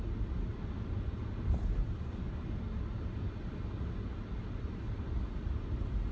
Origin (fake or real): real